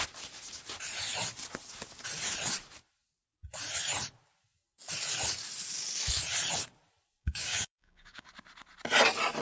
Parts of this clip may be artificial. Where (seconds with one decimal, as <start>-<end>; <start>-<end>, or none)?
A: 7.2-8.3

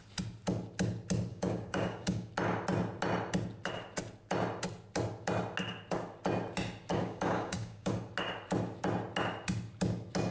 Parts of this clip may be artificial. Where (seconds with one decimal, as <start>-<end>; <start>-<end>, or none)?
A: 1.3-2.3; 6.9-7.9

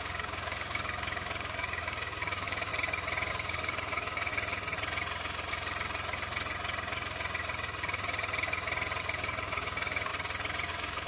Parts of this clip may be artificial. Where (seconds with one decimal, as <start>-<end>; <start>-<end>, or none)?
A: 0.0-2.7; 3.3-4.3; 9.0-10.1; 10.7-11.1

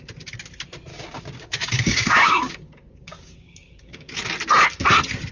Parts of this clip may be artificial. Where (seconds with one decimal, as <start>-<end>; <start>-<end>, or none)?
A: 0.9-4.1

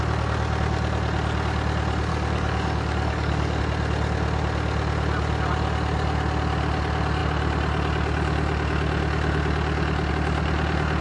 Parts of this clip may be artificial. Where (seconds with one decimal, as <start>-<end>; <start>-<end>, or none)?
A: 2.1-3.6

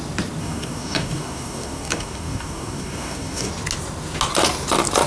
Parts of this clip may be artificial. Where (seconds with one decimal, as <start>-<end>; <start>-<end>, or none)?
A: 0.4-3.5